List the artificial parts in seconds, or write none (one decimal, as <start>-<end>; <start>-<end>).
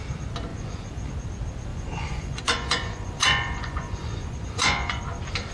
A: 0.5-1.1; 1.7-5.0